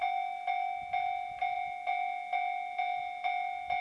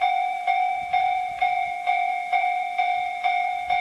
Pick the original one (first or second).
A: first